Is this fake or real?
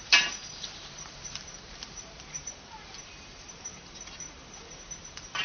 fake